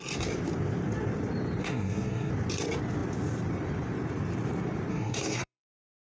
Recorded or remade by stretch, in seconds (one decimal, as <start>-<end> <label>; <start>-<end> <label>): 0.0-1.6 recorded; 1.6-2.3 remade; 2.3-4.9 recorded; 4.9-6.1 remade